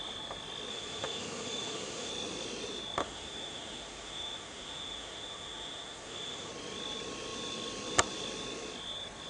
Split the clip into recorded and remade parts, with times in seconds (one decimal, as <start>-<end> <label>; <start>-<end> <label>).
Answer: 0.0-0.7 recorded; 0.7-2.1 remade; 2.1-3.0 recorded; 3.0-6.5 remade; 6.5-9.3 recorded